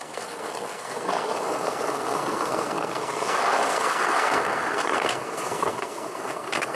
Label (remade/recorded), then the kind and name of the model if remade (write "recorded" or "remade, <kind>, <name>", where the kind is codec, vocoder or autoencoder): remade, codec, SNAC